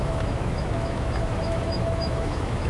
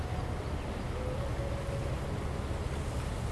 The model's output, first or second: first